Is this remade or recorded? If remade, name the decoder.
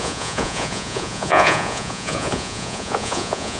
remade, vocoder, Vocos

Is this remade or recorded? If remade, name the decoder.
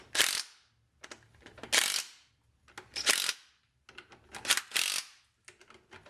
recorded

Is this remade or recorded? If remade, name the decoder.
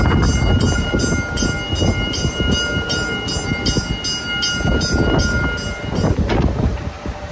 recorded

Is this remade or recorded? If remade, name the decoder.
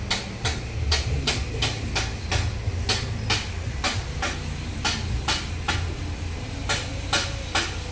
recorded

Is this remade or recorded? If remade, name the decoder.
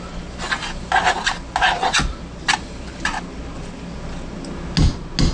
recorded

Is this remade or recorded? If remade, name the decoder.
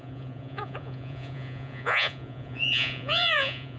remade, vocoder, Vocos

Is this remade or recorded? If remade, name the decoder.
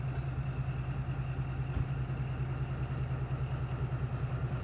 recorded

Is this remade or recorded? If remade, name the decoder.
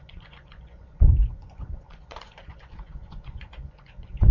remade, vocoder, Vocos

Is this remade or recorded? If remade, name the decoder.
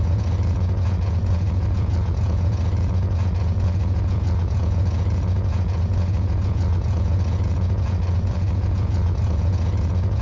remade, vocoder, Vocos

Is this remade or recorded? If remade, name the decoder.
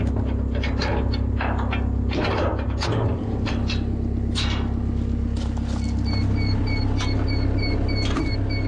recorded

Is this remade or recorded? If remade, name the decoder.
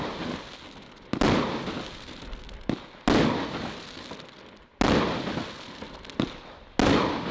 recorded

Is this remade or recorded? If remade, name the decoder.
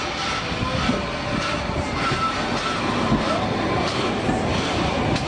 recorded